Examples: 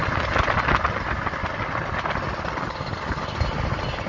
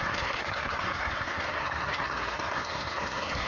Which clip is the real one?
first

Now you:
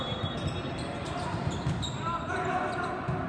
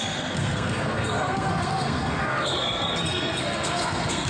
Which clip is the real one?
first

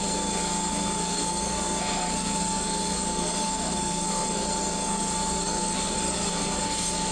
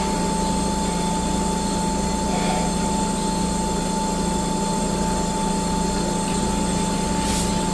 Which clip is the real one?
second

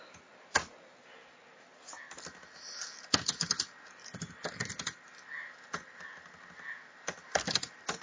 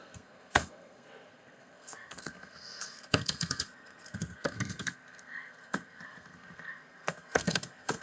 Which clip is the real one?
first